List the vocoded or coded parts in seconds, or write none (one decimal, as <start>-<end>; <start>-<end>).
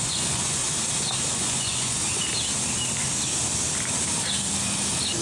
0.0-0.6; 1.3-2.0